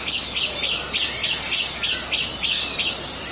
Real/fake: real